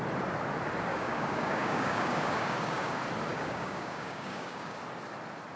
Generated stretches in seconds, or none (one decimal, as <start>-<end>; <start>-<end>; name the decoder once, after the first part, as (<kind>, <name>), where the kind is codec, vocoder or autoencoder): 0.9-2.9 (codec, DAC); 3.3-4.8